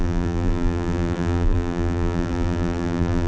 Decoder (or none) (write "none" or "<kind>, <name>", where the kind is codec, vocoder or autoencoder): vocoder, BigVGAN v2